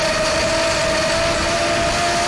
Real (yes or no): yes